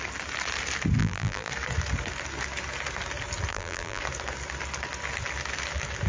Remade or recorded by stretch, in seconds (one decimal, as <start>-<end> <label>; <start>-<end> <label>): 0.0-1.0 recorded; 1.0-1.5 remade; 1.5-3.5 recorded; 3.5-4.0 remade; 4.0-6.1 recorded

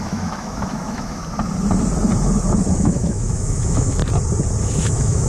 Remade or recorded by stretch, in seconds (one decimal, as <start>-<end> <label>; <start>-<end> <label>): 0.0-1.2 remade; 1.2-2.7 recorded; 2.7-4.0 remade; 4.0-4.6 recorded; 4.6-5.3 remade